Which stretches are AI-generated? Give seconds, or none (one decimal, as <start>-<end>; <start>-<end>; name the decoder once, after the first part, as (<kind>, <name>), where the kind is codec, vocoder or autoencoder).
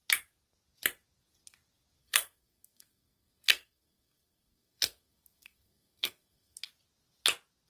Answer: 2.0-6.6 (codec, SNAC)